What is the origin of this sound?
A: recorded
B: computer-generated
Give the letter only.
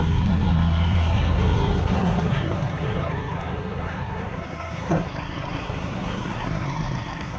B